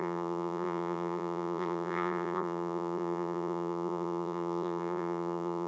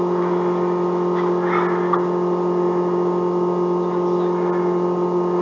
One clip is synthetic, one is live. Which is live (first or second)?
second